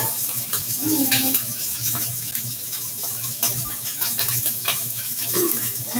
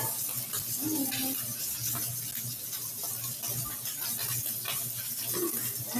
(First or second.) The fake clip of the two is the first